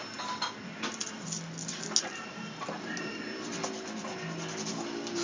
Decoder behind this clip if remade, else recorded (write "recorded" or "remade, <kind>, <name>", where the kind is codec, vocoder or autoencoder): recorded